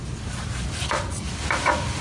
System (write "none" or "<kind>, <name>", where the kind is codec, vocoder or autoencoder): none